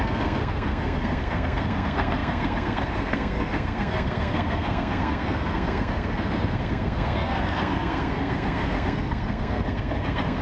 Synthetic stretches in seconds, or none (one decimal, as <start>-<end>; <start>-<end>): 0.0-10.4